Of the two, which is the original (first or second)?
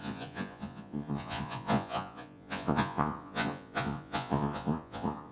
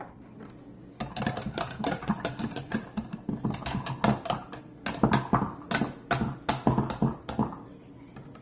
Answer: second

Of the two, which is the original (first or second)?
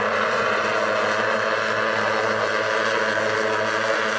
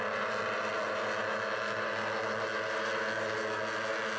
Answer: second